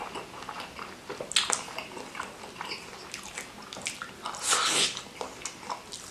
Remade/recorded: recorded